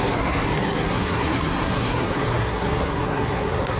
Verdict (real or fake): fake